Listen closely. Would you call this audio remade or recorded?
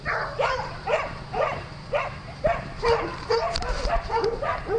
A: remade